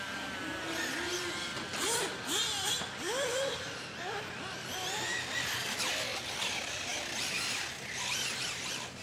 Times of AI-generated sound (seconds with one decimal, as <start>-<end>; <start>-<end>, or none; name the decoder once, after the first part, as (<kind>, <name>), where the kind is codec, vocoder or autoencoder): none